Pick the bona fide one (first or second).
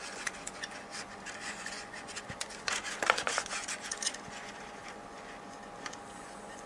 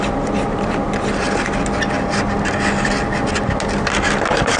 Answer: second